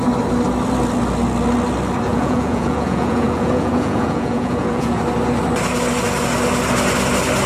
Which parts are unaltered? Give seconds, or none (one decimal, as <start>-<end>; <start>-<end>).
0.0-2.1; 5.0-7.5